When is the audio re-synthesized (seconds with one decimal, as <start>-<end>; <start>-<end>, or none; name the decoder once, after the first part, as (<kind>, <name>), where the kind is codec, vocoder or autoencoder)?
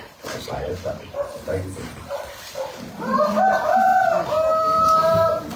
0.0-3.9 (vocoder, BigVGAN v2); 4.5-5.6